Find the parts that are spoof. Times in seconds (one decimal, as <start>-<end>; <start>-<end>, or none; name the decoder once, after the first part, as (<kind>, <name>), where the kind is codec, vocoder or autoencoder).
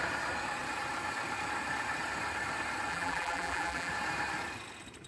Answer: 2.9-3.9 (vocoder, BigVGAN v2)